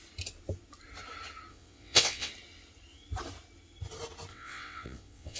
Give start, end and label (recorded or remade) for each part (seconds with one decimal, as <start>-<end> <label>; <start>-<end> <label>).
0.0-1.5 recorded; 1.5-2.3 remade; 2.3-4.3 recorded; 4.3-5.4 remade